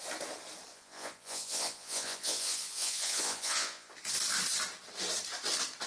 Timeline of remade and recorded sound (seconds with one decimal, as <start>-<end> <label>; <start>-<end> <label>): 0.0-0.7 recorded; 0.7-3.9 remade; 3.9-5.9 recorded